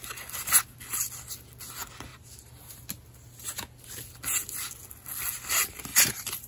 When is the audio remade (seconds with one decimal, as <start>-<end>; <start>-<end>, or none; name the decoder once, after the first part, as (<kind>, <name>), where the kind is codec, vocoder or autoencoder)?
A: 2.1-2.8 (vocoder, BigVGAN v2); 5.9-6.5

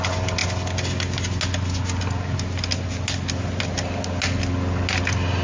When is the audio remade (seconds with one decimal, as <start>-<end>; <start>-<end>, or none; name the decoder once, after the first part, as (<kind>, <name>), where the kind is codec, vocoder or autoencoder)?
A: none

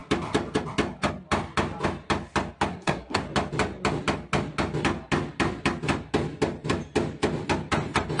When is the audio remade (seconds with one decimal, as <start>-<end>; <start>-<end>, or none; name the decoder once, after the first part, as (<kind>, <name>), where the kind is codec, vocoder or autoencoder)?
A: 2.7-3.2 (codec, SNAC)